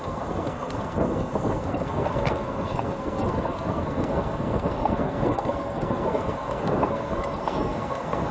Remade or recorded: remade